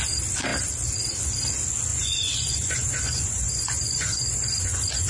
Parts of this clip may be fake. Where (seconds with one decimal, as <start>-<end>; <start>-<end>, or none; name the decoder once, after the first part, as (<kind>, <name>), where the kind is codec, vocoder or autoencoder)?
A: 1.9-5.1 (vocoder, Vocos)